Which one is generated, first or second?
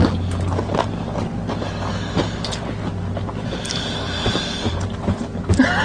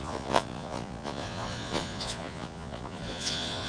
second